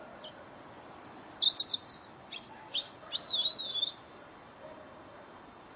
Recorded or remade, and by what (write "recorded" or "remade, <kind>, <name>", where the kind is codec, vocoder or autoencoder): recorded